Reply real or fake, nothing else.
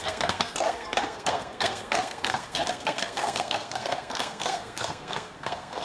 fake